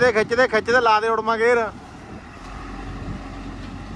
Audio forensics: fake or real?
real